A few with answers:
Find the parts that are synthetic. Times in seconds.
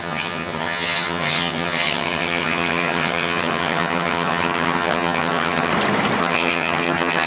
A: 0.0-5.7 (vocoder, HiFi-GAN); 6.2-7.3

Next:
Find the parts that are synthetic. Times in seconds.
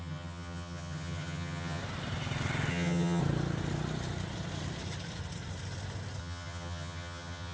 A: 0.0-1.8 (vocoder, HiFi-GAN); 2.7-3.2; 6.2-7.5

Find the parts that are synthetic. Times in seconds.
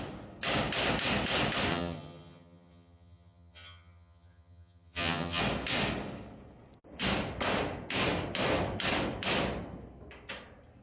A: 1.7-5.4 (vocoder, HiFi-GAN)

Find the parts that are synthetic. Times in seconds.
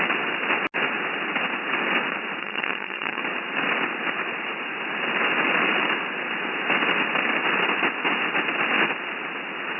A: 2.4-3.2 (vocoder, HiFi-GAN)